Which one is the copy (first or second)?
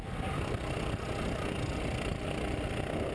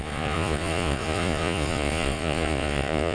second